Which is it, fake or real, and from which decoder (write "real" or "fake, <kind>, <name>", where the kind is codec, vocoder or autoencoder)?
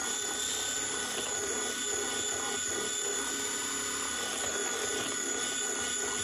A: real